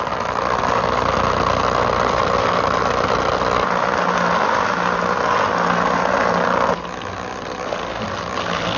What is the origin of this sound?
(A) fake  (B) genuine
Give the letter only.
B